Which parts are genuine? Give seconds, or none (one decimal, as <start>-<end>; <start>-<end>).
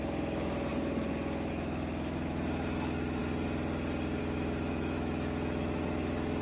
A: 0.7-1.5; 3.2-4.2